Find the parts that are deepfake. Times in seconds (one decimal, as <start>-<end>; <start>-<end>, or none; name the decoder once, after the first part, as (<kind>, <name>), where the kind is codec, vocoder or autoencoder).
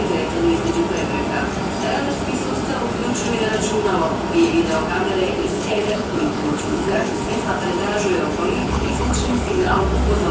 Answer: 5.4-7.3 (codec, HILCodec); 8.6-9.8